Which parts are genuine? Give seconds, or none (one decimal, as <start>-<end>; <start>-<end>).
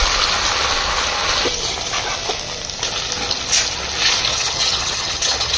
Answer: 0.0-4.3